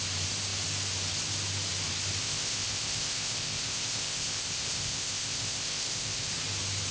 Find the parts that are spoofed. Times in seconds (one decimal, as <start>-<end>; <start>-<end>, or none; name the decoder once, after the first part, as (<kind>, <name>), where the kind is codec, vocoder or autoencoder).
2.2-6.3 (codec, ZipCodec)